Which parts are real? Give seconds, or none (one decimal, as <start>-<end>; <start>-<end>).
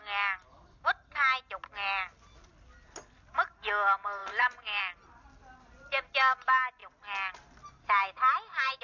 0.0-4.2; 4.8-8.8